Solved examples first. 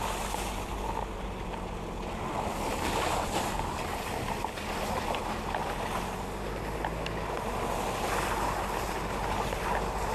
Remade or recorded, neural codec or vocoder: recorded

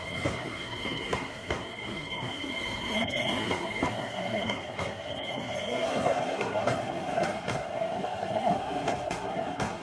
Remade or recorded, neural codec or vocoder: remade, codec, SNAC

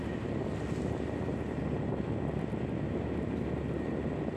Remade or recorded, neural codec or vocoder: recorded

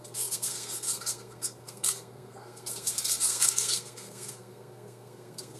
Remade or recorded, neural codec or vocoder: remade, codec, SNAC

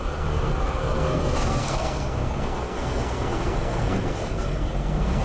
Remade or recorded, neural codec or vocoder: remade, codec, SNAC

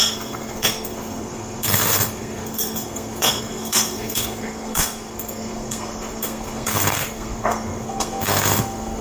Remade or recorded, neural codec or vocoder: remade, codec, SNAC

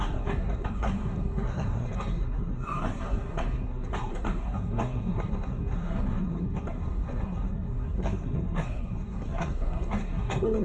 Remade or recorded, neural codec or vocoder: remade, codec, SNAC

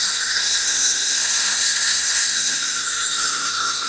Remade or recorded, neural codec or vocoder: remade, codec, SNAC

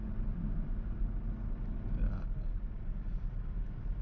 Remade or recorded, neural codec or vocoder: recorded